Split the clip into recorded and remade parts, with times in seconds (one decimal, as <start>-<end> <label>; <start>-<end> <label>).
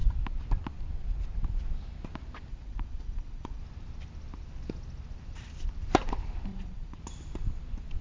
0.0-2.5 recorded; 2.5-3.6 remade; 3.6-6.5 recorded; 6.5-7.0 remade; 7.0-8.0 recorded